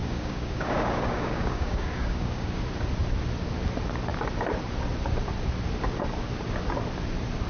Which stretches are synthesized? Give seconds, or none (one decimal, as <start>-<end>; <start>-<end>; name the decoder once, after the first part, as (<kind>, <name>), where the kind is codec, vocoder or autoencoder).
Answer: 0.0-2.6 (codec, DAC)